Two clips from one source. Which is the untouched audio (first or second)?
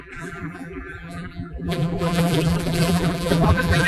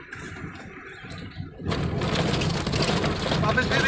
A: second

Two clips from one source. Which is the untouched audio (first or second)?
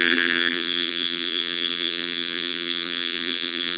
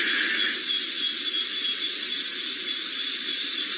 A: second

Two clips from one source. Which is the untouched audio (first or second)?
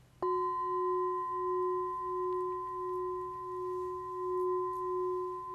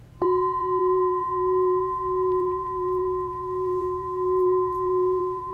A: first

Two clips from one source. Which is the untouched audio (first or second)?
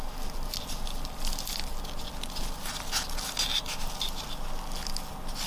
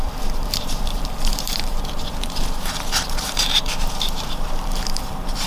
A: first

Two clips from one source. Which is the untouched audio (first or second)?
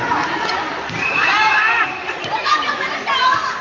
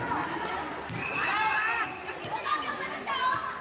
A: second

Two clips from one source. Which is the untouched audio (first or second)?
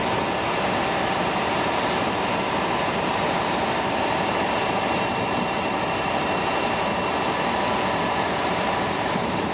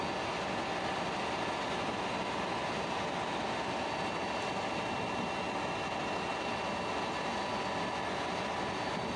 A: second